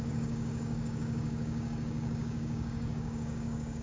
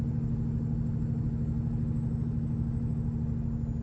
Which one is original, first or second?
second